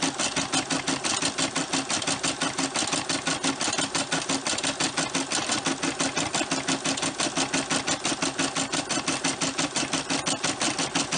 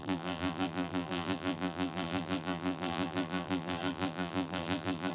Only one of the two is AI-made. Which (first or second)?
second